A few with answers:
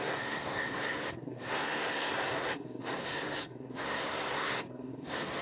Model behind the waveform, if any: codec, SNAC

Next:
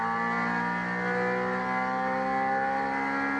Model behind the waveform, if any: none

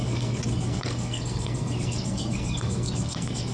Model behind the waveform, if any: codec, SNAC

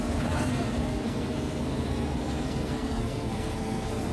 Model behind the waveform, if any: codec, SNAC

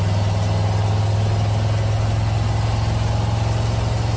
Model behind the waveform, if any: none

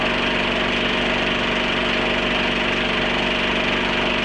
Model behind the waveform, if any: none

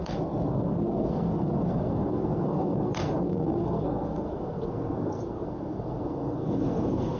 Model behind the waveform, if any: codec, SNAC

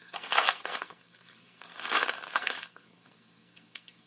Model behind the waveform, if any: codec, SNAC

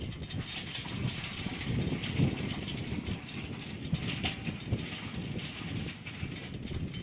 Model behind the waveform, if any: none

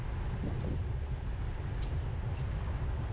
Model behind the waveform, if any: none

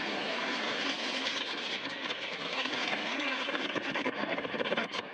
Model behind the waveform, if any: codec, SNAC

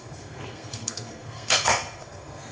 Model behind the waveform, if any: codec, SNAC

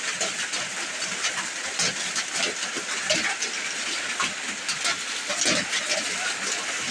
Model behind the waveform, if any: none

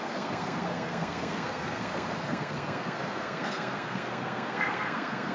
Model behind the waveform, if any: codec, SNAC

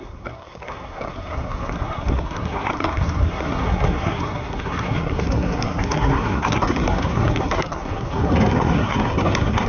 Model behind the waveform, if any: codec, SNAC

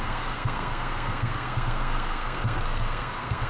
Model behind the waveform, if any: codec, SNAC